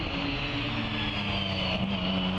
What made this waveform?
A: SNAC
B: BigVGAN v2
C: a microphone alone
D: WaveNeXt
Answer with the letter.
C